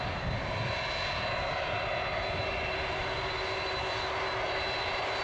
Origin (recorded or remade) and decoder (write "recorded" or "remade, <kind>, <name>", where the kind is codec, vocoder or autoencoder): recorded